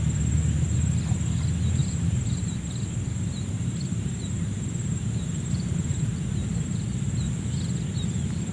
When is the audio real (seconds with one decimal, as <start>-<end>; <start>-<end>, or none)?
0.0-1.8; 6.2-8.5